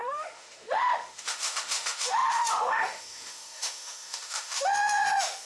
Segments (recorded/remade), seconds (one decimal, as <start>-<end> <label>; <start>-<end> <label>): 0.0-5.5 remade